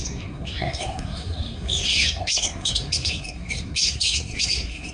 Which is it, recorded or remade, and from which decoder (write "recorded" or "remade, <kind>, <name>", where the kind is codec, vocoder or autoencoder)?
remade, codec, SNAC